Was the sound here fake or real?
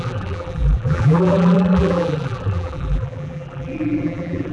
fake